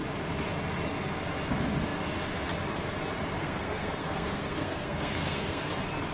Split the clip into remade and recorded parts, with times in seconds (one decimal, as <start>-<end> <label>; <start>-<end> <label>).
0.0-3.4 recorded; 3.4-5.6 remade; 5.6-6.1 recorded